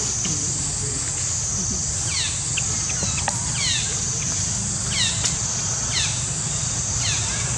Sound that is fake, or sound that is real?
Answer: real